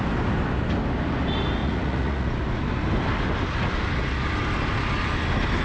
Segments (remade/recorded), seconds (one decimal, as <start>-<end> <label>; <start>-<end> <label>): 0.0-1.6 recorded; 1.6-2.3 remade; 2.3-5.6 recorded